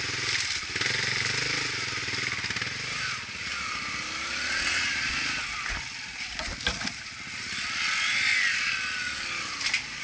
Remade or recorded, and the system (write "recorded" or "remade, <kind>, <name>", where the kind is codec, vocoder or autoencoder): recorded